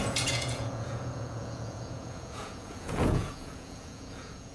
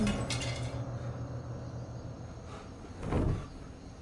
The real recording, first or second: second